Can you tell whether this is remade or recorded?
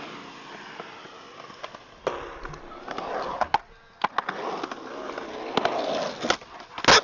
recorded